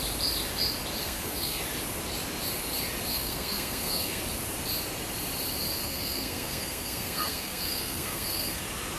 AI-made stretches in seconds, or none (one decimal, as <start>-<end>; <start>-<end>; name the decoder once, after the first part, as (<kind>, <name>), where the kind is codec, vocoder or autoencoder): 1.0-1.6 (codec, SNAC); 3.1-4.2; 5.8-8.6